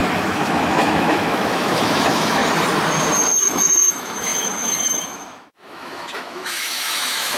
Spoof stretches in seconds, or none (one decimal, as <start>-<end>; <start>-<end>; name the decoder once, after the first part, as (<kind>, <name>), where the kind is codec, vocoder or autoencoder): 0.0-2.4 (autoencoder, DAC-VAE); 3.4-7.4